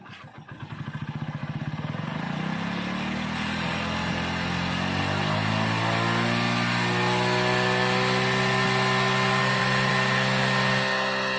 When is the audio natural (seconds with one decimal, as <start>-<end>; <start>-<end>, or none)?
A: 0.0-9.4; 9.9-11.4